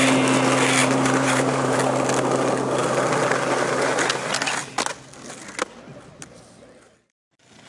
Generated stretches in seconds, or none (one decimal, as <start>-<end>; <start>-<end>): 0.8-1.8